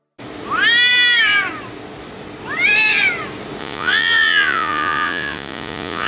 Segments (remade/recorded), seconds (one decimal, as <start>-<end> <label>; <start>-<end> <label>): 0.0-3.6 recorded; 3.6-6.1 remade